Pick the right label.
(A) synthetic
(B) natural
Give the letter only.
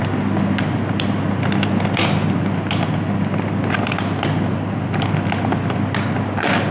B